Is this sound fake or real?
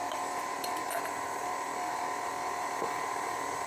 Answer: fake